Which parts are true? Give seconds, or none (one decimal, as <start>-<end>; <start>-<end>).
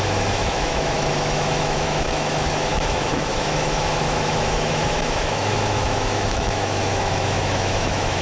none